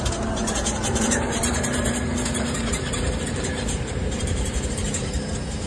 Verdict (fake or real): fake